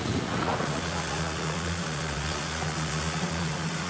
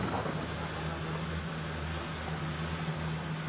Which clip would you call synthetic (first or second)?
first